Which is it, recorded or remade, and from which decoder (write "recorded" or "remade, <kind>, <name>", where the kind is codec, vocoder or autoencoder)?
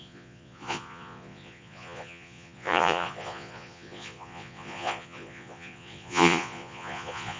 remade, vocoder, Vocos